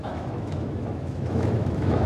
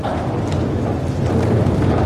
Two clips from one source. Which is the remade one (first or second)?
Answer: first